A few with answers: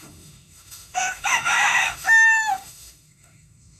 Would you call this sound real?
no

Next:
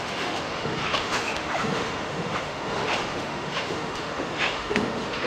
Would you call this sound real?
no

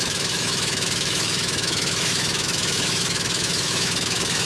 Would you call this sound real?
no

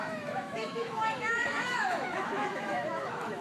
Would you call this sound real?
no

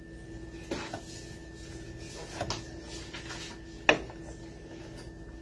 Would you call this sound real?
yes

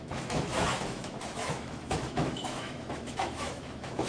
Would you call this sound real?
no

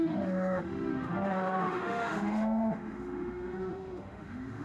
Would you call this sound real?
no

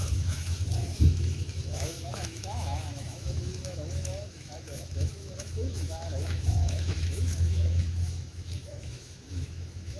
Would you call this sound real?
no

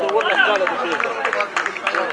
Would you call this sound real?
yes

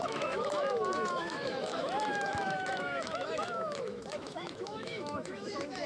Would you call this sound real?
no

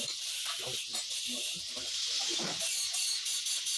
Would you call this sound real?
yes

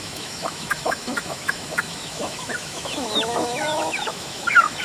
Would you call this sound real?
no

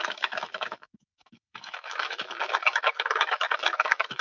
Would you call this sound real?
no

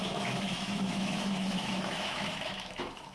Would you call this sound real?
no